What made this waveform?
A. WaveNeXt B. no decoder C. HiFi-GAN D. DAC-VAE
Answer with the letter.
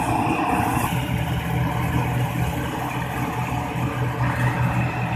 B